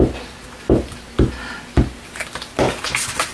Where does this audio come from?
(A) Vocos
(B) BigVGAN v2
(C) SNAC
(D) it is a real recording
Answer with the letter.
D